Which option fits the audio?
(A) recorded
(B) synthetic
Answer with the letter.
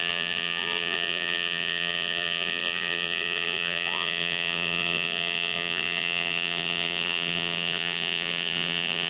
B